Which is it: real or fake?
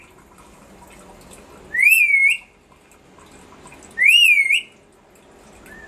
real